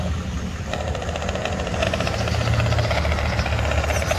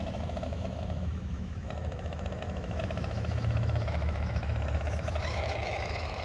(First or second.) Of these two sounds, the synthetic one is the second